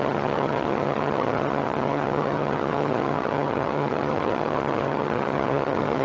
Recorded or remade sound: remade